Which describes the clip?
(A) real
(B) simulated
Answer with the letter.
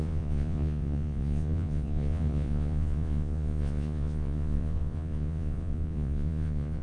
B